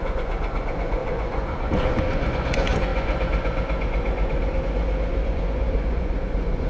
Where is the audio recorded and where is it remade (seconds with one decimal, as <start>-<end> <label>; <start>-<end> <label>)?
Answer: 0.0-6.7 remade